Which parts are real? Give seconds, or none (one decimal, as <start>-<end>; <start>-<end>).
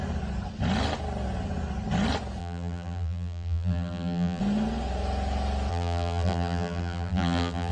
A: 0.0-2.4; 4.4-5.7